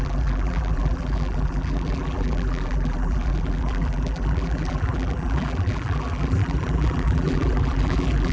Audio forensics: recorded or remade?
remade